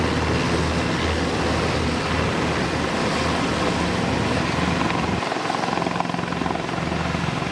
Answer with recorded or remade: recorded